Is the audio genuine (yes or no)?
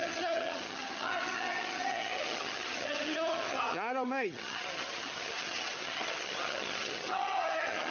no